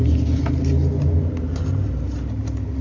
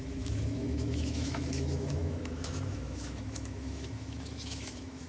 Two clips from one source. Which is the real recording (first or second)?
first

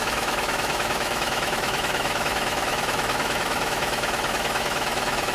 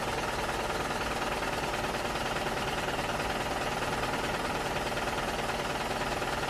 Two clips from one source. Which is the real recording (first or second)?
second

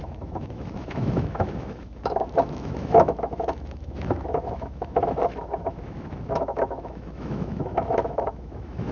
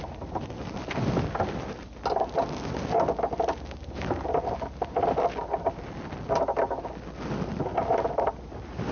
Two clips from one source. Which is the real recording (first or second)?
second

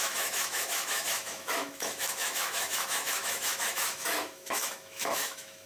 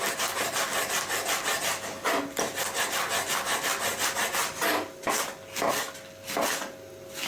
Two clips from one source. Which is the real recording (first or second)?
second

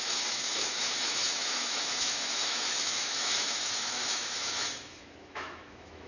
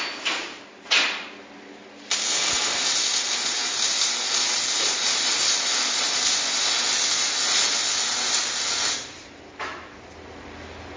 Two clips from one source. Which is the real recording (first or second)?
second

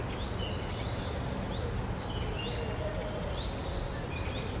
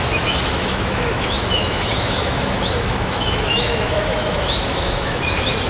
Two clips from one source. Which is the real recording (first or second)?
first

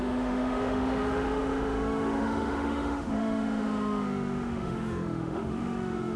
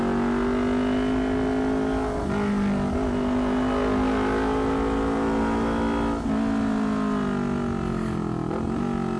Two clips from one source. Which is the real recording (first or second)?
second